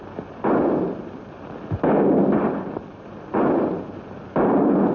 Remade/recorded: recorded